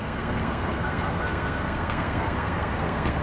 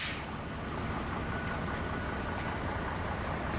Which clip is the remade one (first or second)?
first